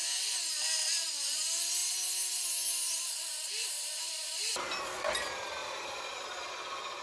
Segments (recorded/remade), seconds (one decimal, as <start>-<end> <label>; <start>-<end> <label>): 0.0-5.6 recorded; 5.6-6.5 remade; 6.5-7.0 recorded